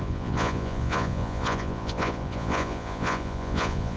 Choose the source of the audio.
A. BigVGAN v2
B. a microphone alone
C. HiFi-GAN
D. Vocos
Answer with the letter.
D